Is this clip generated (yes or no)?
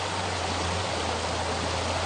no